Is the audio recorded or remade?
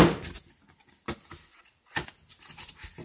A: recorded